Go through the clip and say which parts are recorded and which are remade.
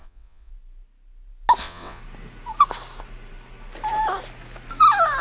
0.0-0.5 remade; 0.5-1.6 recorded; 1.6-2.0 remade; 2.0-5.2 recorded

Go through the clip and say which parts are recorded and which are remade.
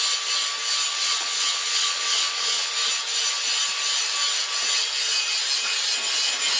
0.0-0.9 recorded; 0.9-2.7 remade; 2.7-6.6 recorded